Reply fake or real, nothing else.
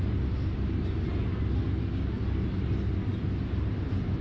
real